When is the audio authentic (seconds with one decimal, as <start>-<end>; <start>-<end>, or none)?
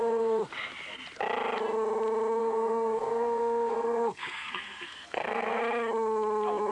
0.4-2.4; 5.6-6.7